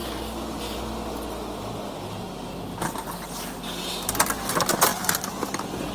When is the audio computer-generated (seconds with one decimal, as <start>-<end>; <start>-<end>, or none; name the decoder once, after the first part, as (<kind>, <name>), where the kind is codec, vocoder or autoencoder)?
none

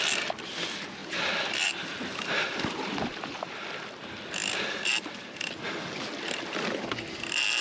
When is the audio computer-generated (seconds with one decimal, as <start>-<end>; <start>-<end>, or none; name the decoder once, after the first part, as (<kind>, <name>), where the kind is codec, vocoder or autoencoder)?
1.0-4.0 (vocoder, BigVGAN v2); 4.4-5.5

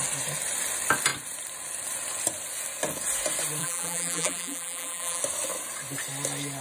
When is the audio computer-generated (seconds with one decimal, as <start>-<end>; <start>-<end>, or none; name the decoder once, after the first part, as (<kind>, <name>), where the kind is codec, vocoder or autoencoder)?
3.6-5.2 (vocoder, BigVGAN v2)

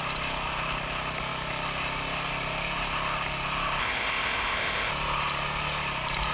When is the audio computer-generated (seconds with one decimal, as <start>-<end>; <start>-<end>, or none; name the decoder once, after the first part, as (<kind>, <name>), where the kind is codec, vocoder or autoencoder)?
3.8-4.9 (codec, ZipCodec)